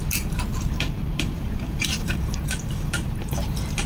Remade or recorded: remade